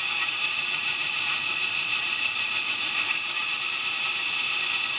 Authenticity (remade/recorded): remade